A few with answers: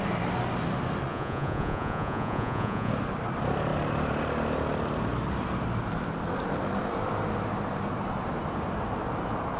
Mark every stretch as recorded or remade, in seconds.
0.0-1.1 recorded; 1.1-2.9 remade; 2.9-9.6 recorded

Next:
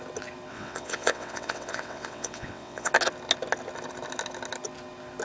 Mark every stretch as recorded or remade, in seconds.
0.0-0.5 recorded; 0.5-2.9 remade; 2.9-5.2 recorded

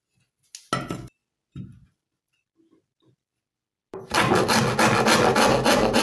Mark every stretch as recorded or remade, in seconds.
0.0-1.2 recorded; 1.2-4.8 remade; 4.8-6.0 recorded

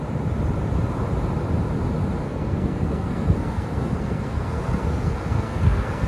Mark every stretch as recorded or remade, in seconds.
0.0-2.2 recorded; 2.2-6.1 remade

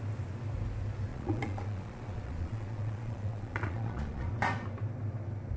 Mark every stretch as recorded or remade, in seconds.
0.0-1.1 recorded; 1.1-4.3 remade; 4.3-5.6 recorded

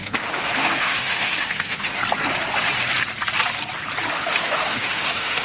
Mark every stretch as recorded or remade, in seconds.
0.0-2.0 remade; 2.0-4.1 recorded; 4.1-5.4 remade

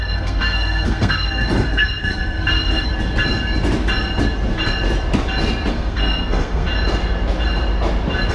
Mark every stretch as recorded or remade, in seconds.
0.0-2.9 remade; 2.9-5.7 recorded; 5.7-6.7 remade; 6.7-8.3 recorded